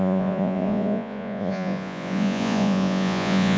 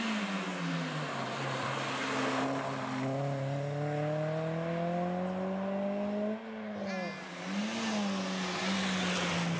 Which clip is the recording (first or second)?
second